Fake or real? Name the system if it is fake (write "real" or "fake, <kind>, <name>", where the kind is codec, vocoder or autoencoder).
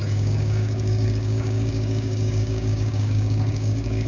fake, codec, DAC